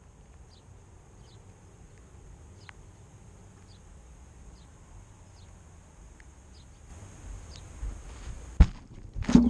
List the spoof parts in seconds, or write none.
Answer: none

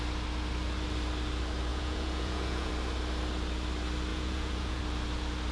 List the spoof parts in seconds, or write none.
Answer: 1.7-2.7; 4.1-4.8

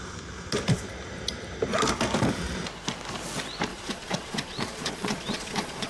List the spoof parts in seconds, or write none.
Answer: 3.7-5.9